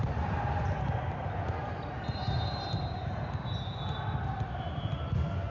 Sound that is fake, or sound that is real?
real